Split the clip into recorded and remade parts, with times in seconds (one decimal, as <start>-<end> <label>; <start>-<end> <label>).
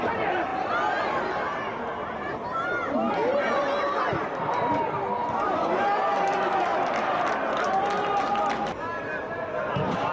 0.0-10.1 recorded